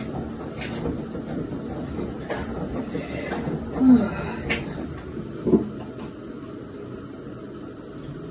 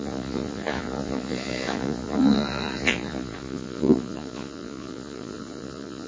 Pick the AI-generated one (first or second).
second